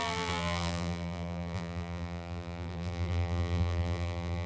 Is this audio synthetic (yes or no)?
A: yes